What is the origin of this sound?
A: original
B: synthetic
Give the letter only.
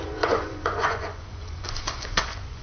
B